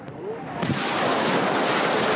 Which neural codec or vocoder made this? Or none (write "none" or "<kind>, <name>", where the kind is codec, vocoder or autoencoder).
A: none